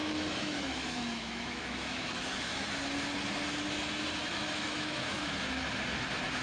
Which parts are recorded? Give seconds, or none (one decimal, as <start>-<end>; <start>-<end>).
2.8-4.2; 5.6-6.4